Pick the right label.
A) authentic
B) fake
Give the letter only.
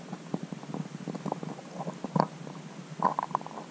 A